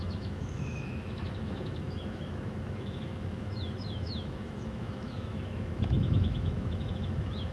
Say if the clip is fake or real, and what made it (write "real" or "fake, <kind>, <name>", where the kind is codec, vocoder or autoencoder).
fake, autoencoder, DAC-VAE